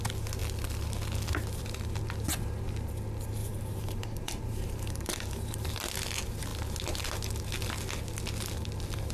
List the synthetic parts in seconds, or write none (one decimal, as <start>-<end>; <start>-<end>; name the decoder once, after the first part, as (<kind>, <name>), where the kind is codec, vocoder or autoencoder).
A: 3.4-5.6 (vocoder, BigVGAN v2)